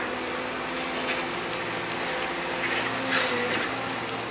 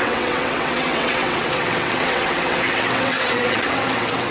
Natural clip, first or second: first